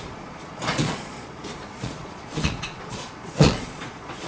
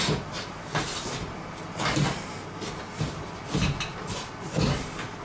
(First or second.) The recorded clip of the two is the second